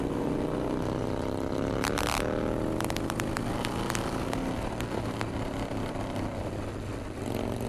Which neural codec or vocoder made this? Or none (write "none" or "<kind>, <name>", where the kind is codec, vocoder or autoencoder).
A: none